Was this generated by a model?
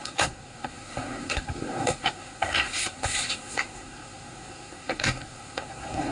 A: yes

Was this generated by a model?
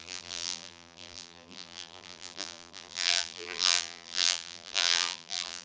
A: yes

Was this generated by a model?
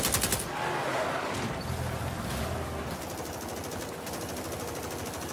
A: no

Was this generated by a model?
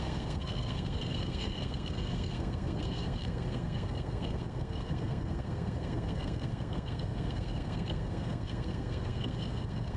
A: yes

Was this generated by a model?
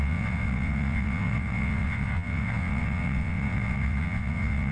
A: yes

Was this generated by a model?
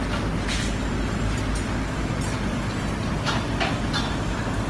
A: no